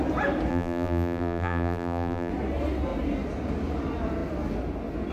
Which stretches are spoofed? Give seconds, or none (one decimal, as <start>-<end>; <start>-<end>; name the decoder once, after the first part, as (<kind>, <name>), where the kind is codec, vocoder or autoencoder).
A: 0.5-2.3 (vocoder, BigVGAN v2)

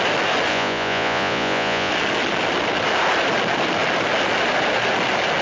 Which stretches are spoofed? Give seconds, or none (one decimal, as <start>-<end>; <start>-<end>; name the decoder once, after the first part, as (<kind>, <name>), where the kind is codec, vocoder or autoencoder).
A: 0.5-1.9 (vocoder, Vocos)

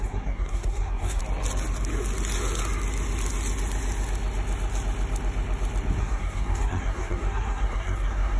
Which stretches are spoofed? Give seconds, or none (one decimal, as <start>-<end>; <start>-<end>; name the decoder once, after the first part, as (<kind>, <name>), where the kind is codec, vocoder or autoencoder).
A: 0.0-1.2 (codec, SNAC); 6.0-8.4